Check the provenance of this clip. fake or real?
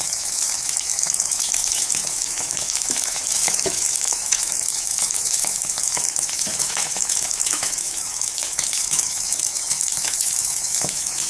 fake